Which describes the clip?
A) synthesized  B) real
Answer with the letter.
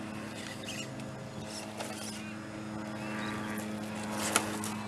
B